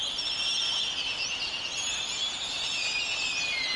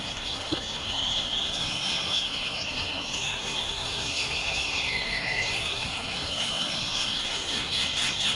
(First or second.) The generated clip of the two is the second